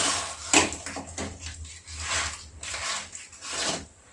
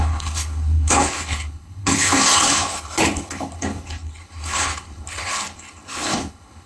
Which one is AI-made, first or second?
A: second